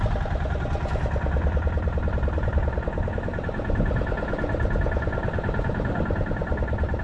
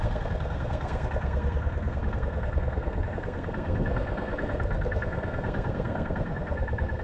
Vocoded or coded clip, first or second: second